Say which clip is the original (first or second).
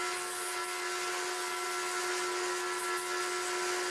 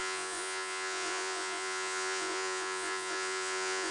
first